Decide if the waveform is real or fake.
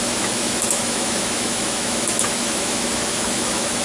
fake